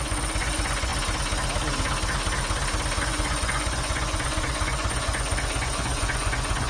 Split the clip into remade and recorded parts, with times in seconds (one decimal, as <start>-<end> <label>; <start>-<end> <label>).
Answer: 0.0-0.9 remade; 0.9-3.0 recorded; 3.0-6.7 remade